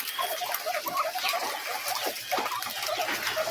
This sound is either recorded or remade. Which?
recorded